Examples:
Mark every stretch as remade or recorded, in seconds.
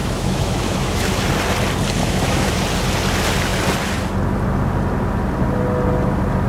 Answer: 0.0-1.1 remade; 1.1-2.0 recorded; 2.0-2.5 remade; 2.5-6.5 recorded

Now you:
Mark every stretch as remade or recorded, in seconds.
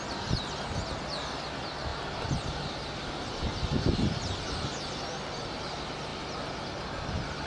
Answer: 0.0-7.5 recorded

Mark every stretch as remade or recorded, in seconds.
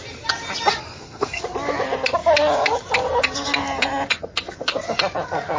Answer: 0.0-0.8 recorded; 0.8-1.4 remade; 1.4-5.6 recorded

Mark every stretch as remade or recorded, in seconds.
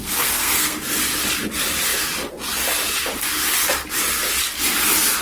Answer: 0.0-0.8 remade; 0.8-5.2 recorded